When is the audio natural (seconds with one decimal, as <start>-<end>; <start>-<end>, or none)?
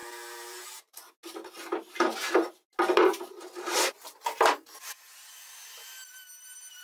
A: 1.1-6.8